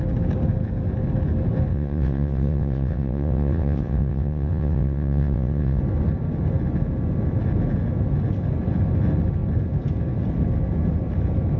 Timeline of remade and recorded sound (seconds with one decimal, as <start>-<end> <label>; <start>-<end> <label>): 0.0-1.7 recorded; 1.7-5.8 remade; 5.8-11.6 recorded